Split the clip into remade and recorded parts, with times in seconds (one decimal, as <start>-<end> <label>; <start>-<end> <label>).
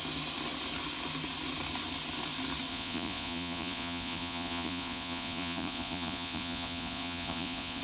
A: 0.0-2.7 recorded; 2.7-7.8 remade